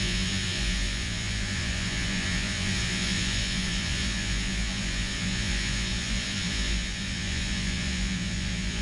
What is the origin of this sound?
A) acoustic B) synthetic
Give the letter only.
B